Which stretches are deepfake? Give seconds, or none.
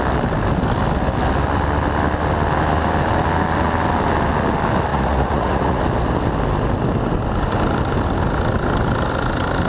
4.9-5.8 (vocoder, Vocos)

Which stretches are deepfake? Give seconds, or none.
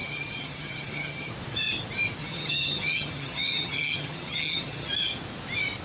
0.0-1.3 (vocoder, HiFi-GAN); 2.2-4.9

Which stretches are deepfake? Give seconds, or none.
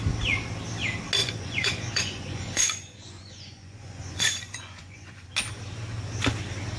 1.2-5.3 (vocoder, Vocos)